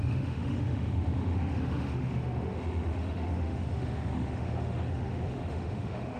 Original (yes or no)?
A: no